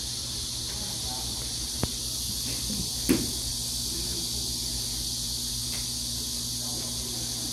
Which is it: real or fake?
real